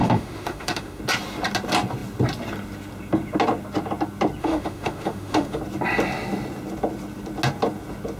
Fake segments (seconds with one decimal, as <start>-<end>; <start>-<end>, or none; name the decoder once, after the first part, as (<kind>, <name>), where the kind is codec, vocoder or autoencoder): 0.0-1.0 (autoencoder, DAC-VAE); 4.4-5.6